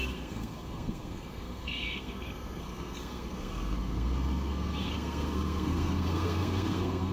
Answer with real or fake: fake